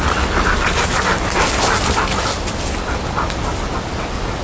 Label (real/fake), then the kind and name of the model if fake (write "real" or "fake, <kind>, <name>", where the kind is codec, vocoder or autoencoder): real